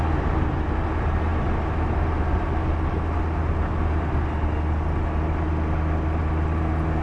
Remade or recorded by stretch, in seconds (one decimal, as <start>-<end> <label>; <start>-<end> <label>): 0.0-7.0 recorded